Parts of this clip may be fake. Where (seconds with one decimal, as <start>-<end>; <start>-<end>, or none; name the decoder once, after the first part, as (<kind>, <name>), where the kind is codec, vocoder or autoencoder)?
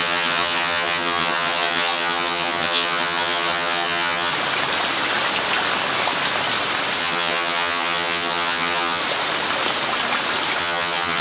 0.0-4.3 (vocoder, HiFi-GAN); 7.0-9.0; 10.6-11.2